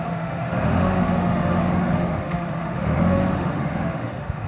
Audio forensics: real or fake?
fake